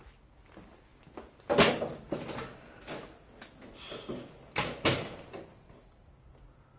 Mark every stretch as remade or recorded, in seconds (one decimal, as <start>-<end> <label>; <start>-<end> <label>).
0.0-6.8 recorded